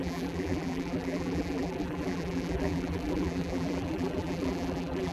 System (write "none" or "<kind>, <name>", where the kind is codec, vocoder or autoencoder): vocoder, BigVGAN v2